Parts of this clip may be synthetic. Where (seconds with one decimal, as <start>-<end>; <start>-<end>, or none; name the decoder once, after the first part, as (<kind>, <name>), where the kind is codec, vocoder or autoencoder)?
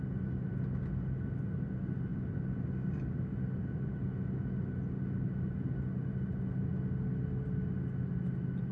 none